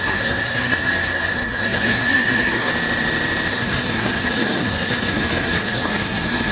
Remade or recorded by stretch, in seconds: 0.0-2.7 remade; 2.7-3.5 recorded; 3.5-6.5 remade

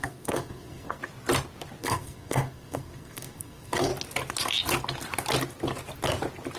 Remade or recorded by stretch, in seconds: 0.0-1.0 remade; 1.0-1.8 recorded; 1.8-3.9 remade; 3.9-6.6 recorded